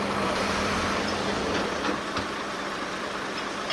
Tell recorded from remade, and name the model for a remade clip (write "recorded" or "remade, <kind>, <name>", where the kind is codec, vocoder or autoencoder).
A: remade, vocoder, BigVGAN v2